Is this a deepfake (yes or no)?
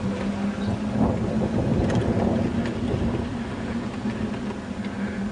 no